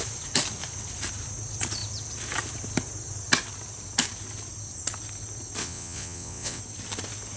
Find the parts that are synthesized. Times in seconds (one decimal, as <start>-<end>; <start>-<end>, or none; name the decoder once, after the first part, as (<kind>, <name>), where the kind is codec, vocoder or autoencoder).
5.6-6.6 (vocoder, WaveNeXt)